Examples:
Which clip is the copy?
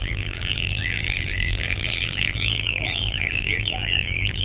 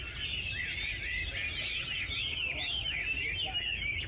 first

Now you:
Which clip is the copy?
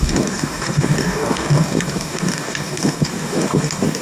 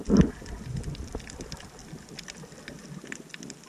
first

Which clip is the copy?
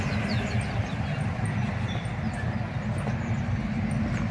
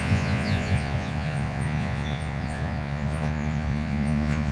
second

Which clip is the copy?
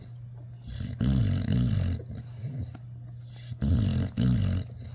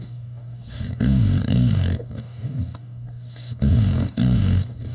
second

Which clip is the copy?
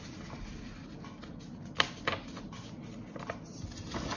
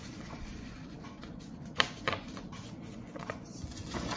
second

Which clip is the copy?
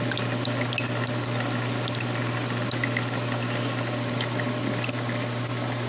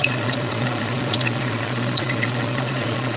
second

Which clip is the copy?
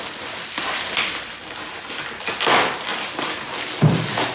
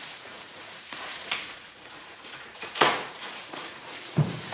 second